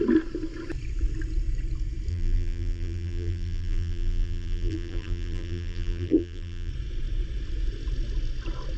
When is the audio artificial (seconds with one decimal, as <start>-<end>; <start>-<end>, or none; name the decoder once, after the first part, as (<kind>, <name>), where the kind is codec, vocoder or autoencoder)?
2.1-6.7 (vocoder, BigVGAN v2)

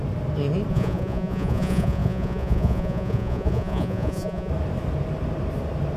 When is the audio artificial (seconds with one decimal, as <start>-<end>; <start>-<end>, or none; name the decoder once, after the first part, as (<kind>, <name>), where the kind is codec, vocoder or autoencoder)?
0.7-4.5 (vocoder, Vocos)